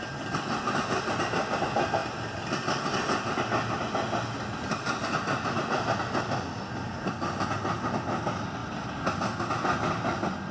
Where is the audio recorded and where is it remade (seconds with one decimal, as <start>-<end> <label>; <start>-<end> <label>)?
0.0-10.5 recorded